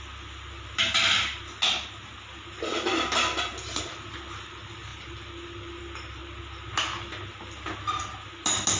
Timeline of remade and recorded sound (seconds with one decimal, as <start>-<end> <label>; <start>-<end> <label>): 0.0-8.8 recorded